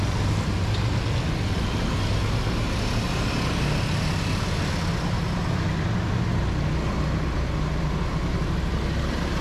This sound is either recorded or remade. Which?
recorded